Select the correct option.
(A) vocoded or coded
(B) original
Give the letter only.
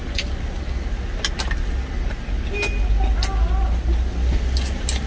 B